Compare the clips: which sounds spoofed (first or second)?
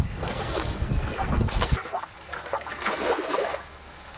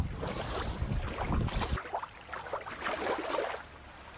first